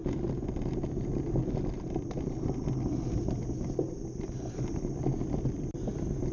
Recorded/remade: recorded